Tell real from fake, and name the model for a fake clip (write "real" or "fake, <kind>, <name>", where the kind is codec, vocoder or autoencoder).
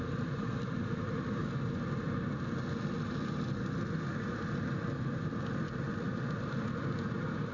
real